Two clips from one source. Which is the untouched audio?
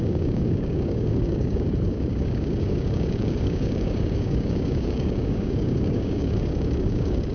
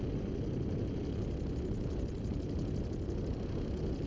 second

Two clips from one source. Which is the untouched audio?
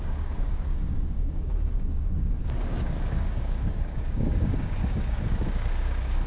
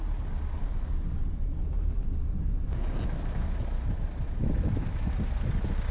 second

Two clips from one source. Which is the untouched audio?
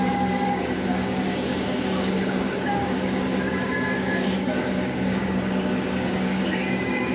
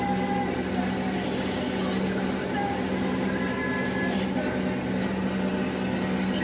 second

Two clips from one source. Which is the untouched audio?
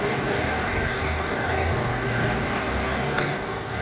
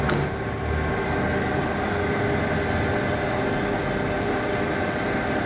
second